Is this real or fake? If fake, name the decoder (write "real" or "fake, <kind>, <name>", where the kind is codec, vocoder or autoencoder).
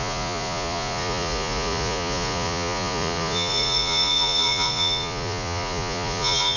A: fake, vocoder, Vocos